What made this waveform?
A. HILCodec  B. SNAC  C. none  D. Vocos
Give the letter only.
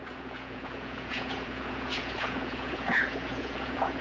D